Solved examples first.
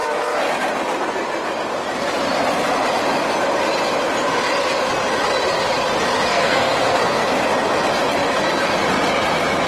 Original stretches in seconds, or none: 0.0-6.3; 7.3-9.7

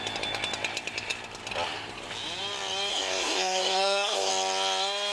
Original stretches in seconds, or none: 0.0-2.9; 4.3-5.1

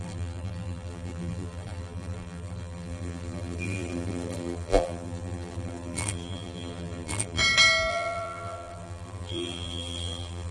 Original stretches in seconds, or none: 7.4-7.9